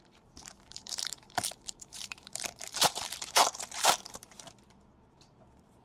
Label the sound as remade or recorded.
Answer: remade